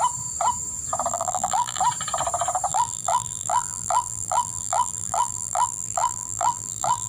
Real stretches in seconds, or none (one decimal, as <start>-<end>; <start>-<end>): 0.0-1.1; 1.8-2.7